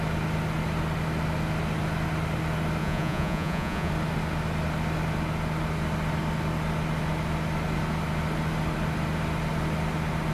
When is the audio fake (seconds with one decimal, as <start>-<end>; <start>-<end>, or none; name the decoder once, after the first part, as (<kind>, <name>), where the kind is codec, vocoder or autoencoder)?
2.8-3.9 (vocoder, Vocos)